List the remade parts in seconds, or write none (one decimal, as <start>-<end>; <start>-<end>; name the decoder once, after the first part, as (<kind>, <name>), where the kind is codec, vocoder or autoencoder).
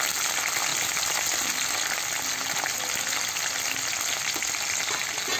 none